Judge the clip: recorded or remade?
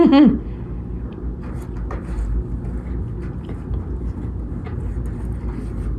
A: recorded